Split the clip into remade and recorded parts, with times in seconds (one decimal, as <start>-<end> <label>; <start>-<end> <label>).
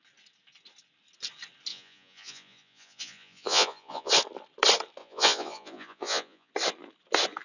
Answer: 0.0-1.7 recorded; 1.7-4.1 remade; 4.1-5.0 recorded; 5.0-6.5 remade; 6.5-7.4 recorded